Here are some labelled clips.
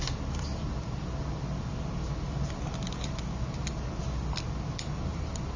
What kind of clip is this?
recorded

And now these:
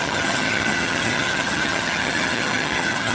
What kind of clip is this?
remade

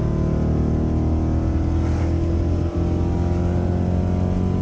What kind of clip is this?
recorded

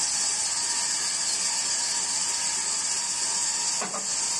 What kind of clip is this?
recorded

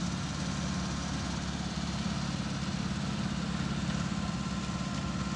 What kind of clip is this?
recorded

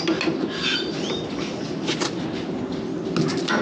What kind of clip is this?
recorded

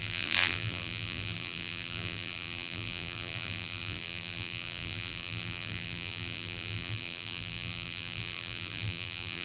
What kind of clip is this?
remade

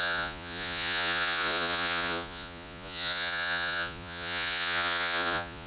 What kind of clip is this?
remade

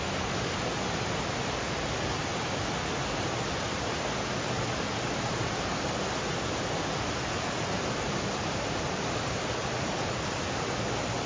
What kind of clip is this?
recorded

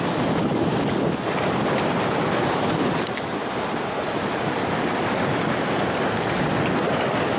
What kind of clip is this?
recorded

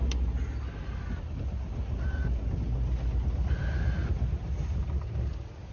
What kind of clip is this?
recorded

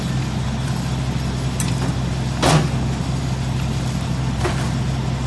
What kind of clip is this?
recorded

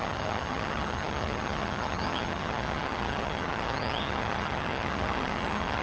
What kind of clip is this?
remade